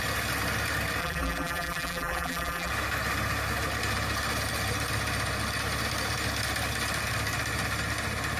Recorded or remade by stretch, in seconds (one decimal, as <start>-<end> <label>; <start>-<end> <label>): 0.0-1.0 recorded; 1.0-2.7 remade; 2.7-8.4 recorded